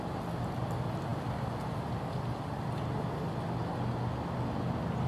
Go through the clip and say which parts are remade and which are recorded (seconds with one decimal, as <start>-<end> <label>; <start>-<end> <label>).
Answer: 0.0-5.1 recorded